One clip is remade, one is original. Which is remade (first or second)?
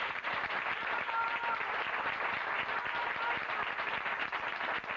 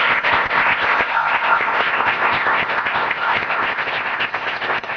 second